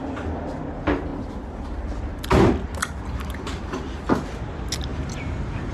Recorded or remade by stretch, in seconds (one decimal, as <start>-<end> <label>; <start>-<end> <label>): 0.0-5.7 recorded

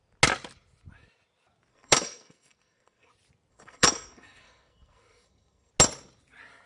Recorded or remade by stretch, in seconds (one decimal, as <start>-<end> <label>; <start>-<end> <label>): 0.0-1.7 recorded; 1.7-3.1 remade; 3.1-3.5 recorded; 3.5-5.7 remade; 5.7-6.7 recorded

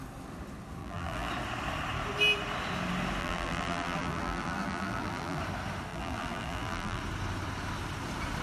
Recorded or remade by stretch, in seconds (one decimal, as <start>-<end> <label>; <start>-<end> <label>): 0.0-0.8 recorded; 0.8-1.3 remade; 1.3-3.2 recorded; 3.2-5.4 remade; 5.4-5.9 recorded; 5.9-7.0 remade; 7.0-8.4 recorded

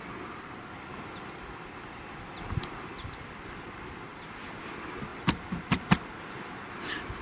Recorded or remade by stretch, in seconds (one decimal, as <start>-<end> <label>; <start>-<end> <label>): 0.0-7.2 recorded

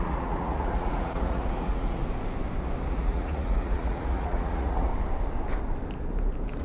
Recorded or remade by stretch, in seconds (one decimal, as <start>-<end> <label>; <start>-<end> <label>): 0.0-2.0 remade; 2.0-2.9 recorded; 2.9-4.9 remade; 4.9-6.6 recorded

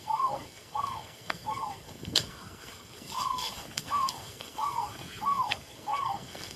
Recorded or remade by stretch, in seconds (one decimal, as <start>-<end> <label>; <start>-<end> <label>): 0.0-6.6 remade

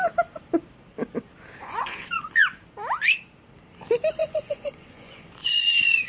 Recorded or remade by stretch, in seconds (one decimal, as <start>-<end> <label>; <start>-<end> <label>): 0.0-1.6 recorded; 1.6-2.3 remade; 2.3-4.2 recorded; 4.2-6.1 remade

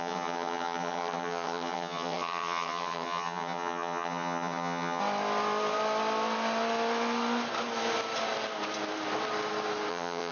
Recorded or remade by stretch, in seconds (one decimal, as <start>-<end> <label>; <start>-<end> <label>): 0.0-5.0 remade; 5.0-9.9 recorded; 9.9-10.3 remade